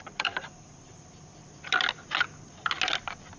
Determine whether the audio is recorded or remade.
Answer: recorded